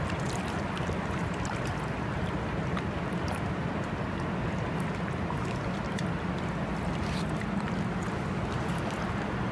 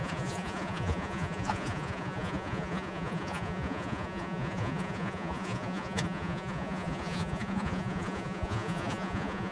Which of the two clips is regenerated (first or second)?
second